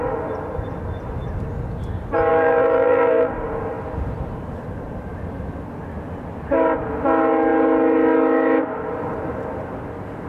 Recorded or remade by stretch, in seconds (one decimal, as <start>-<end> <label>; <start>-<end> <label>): 0.0-2.3 recorded; 2.3-3.3 remade; 3.3-10.3 recorded